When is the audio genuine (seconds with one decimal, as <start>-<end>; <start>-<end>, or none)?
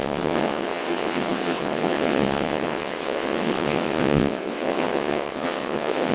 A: none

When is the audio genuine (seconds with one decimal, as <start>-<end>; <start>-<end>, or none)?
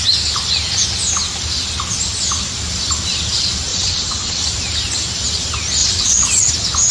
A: 0.0-3.7; 4.4-5.8; 6.5-6.9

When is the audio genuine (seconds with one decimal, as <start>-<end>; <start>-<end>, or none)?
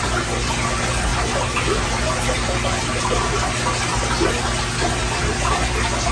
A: 0.0-6.1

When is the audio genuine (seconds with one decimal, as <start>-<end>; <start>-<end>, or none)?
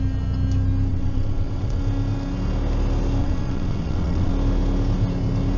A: 0.0-0.9; 1.8-3.2; 4.3-5.6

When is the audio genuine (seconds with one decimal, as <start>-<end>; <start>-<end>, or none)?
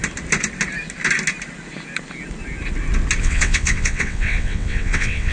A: 0.0-3.2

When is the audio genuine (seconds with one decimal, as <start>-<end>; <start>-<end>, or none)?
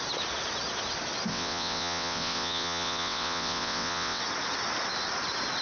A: 0.0-1.3; 4.2-5.6